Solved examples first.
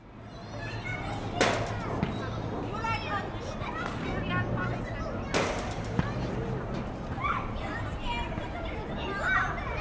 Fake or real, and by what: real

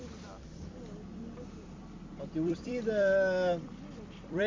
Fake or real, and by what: fake, vocoder, BigVGAN v2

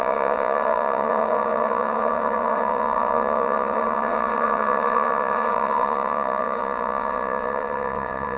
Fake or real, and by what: fake, vocoder, WaveNeXt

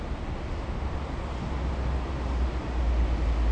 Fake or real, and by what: real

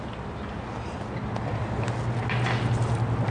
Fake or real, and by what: real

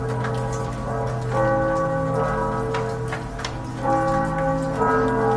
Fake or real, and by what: real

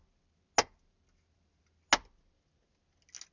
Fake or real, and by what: real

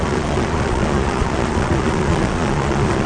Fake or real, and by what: fake, vocoder, Vocos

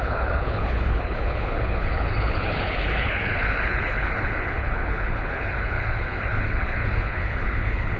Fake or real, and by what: fake, codec, HILCodec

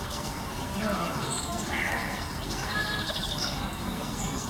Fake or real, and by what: fake, codec, SNAC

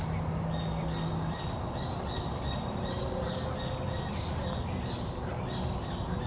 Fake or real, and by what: real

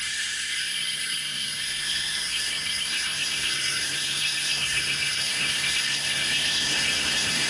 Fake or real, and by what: fake, codec, SNAC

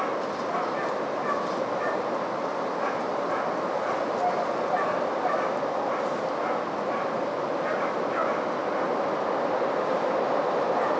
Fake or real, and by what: real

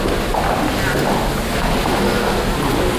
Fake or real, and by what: real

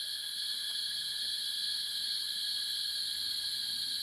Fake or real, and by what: real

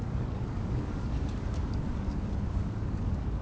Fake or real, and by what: fake, codec, DAC